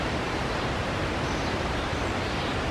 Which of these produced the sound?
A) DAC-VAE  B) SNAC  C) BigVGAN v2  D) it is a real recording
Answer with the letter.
C